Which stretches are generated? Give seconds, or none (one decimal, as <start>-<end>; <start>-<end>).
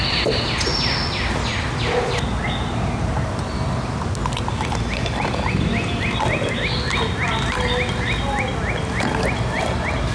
none